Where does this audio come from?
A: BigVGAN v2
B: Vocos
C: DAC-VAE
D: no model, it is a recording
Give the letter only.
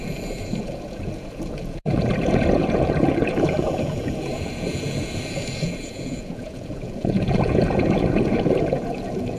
B